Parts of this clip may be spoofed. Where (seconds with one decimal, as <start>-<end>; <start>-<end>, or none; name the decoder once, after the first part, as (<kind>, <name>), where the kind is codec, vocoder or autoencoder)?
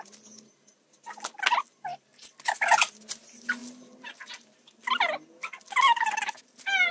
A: none